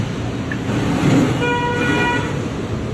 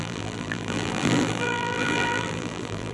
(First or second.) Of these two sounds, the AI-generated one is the second